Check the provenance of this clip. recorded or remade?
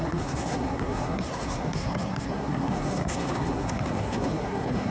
remade